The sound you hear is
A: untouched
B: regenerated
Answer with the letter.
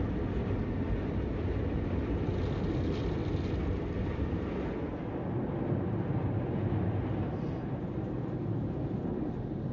A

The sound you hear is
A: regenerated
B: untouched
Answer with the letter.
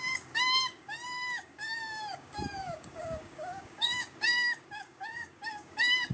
A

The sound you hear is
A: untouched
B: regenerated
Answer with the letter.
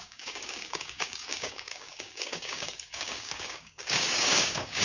B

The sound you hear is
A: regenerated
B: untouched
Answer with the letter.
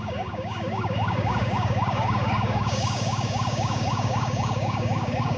A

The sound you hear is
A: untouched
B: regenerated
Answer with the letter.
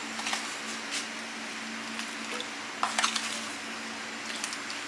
A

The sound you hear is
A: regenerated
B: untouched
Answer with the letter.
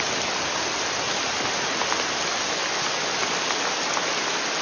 B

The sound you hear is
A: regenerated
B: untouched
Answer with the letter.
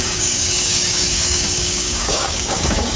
A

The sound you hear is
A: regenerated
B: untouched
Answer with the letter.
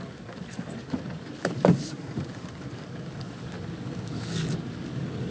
A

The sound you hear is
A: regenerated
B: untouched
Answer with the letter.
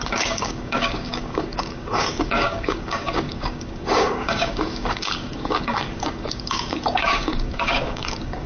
A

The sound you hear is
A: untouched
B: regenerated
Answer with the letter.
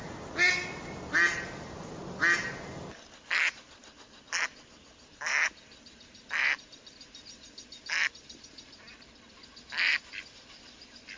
A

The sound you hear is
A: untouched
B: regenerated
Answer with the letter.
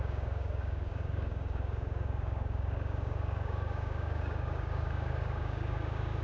B